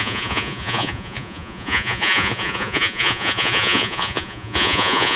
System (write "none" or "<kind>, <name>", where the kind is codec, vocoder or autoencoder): vocoder, Vocos